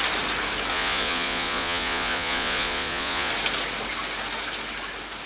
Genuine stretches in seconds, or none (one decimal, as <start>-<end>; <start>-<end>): 0.0-0.7; 3.3-5.3